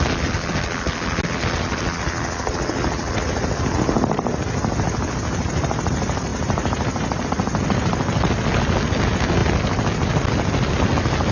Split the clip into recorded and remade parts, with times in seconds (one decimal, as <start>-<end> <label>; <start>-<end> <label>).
0.0-6.3 recorded; 6.3-7.2 remade; 7.2-11.3 recorded